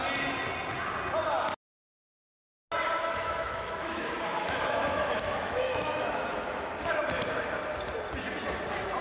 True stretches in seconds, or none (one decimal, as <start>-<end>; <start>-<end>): 0.0-3.0; 6.7-9.0